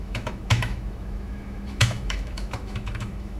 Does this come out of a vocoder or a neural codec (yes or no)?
yes